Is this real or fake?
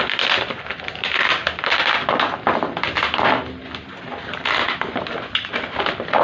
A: real